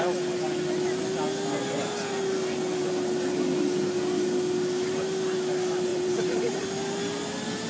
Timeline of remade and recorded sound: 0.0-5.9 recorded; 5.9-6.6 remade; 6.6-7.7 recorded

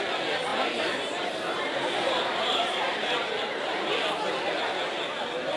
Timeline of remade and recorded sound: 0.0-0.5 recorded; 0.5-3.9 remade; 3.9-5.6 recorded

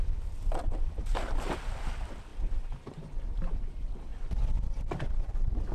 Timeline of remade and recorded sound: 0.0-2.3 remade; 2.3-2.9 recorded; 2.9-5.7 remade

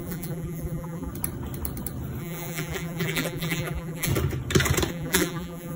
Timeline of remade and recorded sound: 0.0-1.1 remade; 1.1-2.2 recorded; 2.2-4.1 remade; 4.1-4.9 recorded; 4.9-5.8 remade

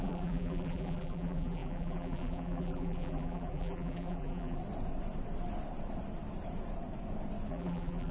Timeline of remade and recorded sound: 0.0-4.6 remade; 4.6-7.5 recorded; 7.5-8.1 remade